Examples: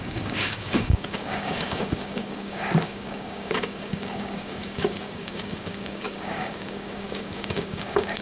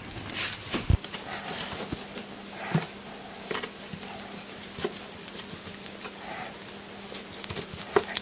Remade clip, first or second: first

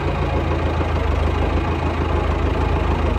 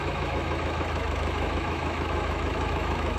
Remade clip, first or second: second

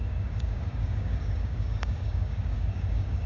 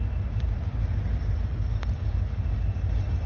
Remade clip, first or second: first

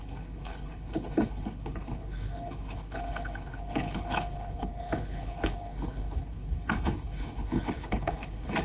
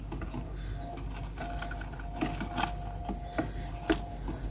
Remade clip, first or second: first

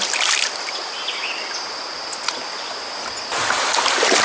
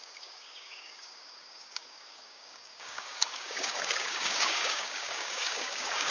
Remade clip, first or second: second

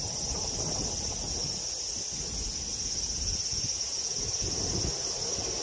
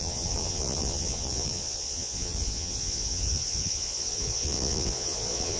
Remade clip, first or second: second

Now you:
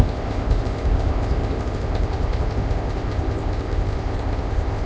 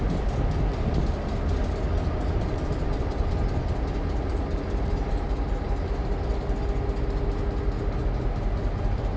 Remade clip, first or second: first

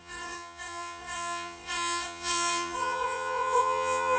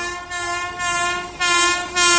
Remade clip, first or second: first